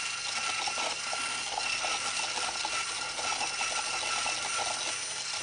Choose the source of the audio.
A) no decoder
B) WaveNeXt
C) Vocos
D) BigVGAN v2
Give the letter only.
A